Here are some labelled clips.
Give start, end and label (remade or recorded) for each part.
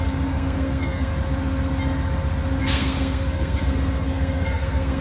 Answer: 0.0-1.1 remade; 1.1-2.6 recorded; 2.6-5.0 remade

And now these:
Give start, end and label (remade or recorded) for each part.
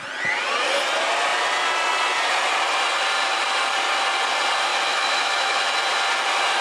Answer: 0.0-4.7 recorded; 4.7-5.6 remade; 5.6-6.6 recorded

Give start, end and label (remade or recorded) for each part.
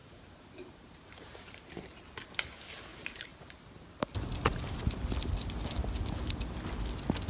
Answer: 0.0-2.0 remade; 2.0-2.9 recorded; 2.9-3.6 remade; 3.6-7.3 recorded